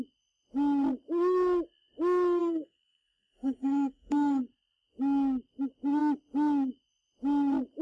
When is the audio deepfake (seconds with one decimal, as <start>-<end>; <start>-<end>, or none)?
2.4-4.4